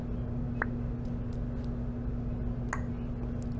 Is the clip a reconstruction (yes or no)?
no